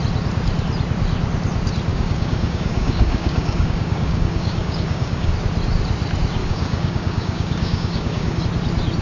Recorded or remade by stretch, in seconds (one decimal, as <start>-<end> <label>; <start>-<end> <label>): 0.0-1.9 recorded; 1.9-5.3 remade; 5.3-6.4 recorded; 6.4-8.4 remade; 8.4-9.0 recorded